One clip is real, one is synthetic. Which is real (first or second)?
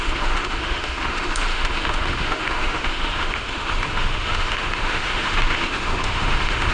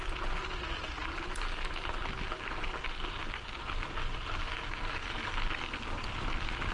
second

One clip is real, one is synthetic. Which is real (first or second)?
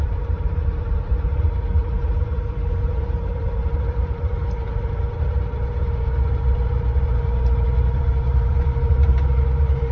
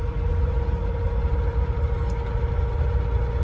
second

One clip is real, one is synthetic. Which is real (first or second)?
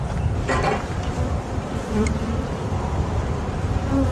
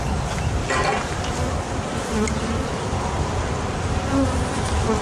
second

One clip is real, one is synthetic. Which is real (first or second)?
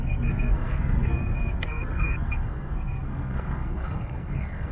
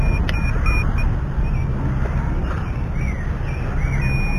second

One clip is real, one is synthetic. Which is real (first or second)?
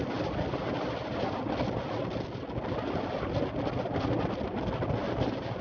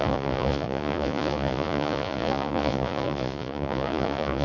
first